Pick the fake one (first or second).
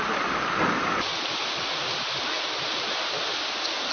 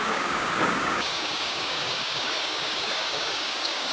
second